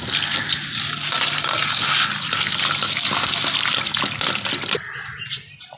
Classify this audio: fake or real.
real